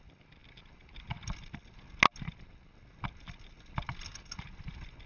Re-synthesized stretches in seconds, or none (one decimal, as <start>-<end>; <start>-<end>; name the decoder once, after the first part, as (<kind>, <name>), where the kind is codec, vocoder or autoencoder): none